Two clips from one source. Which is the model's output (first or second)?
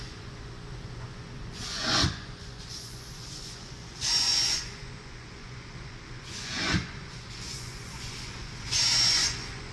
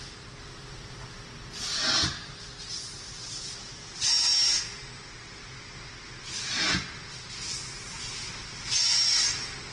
first